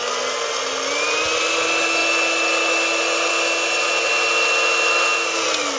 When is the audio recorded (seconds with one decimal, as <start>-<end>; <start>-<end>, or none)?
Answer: 0.0-5.8